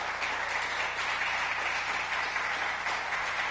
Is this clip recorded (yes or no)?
yes